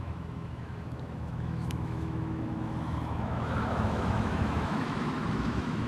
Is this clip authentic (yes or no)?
no